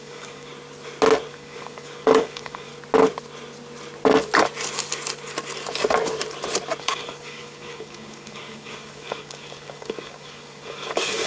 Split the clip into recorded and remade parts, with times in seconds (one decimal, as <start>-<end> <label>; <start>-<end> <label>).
0.0-0.5 remade; 0.5-1.3 recorded; 1.3-2.7 remade; 2.7-6.8 recorded; 6.8-11.3 remade